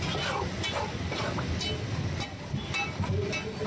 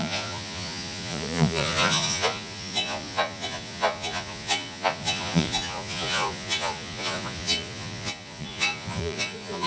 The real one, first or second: first